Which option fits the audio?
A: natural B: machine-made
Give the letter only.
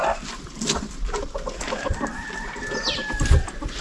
A